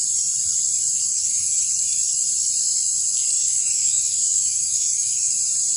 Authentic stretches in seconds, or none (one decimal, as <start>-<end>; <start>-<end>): 0.0-1.1; 1.6-3.4; 5.3-5.8